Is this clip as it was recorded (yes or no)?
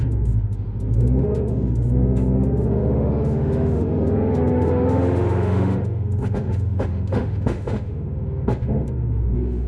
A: no